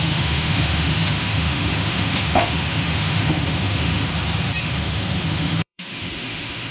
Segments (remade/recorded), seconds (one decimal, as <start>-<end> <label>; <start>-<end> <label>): 0.0-4.1 remade; 4.1-4.6 recorded; 4.6-6.7 remade